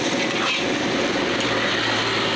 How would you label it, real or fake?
real